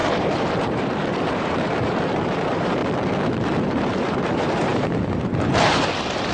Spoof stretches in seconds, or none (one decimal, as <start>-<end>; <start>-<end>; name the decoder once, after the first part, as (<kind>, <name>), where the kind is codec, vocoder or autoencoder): 0.0-2.8 (vocoder, BigVGAN v2); 3.6-6.3